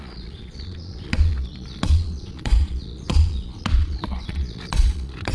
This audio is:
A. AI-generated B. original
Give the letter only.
A